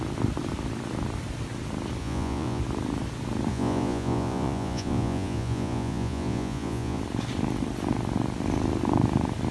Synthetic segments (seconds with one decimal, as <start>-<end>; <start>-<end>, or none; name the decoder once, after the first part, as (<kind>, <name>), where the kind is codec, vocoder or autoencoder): 2.0-2.6 (vocoder, Vocos); 3.5-7.0